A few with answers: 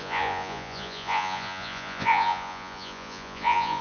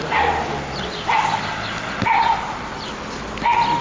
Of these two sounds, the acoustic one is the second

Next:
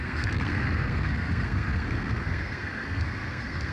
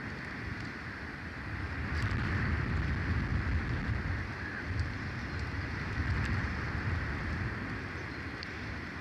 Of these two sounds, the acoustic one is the second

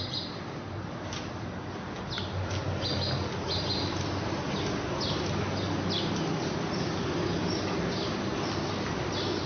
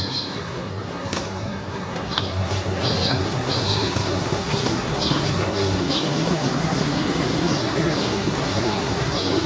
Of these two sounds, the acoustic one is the first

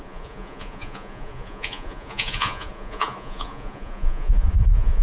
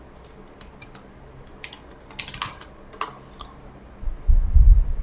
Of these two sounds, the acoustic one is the second